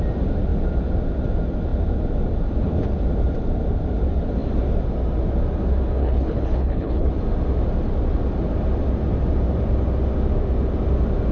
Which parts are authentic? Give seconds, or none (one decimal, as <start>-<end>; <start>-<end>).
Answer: 0.0-6.0; 7.1-11.3